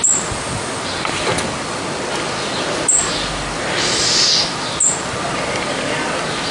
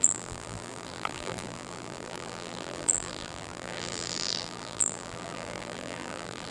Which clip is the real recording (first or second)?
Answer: first